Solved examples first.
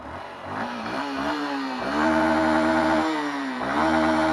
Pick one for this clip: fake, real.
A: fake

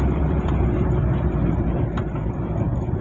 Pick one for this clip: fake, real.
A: fake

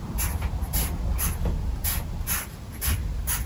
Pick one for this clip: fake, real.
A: real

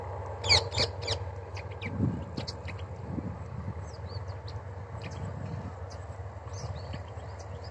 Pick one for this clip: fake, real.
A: real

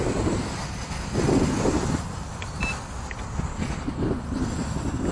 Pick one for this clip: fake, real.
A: real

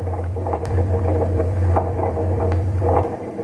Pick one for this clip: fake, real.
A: fake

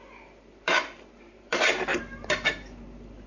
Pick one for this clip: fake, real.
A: fake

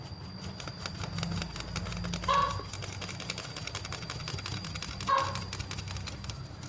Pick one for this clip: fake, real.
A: real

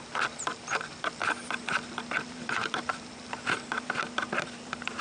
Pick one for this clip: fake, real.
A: fake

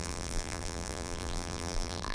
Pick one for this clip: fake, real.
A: fake